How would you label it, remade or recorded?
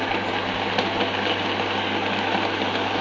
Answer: recorded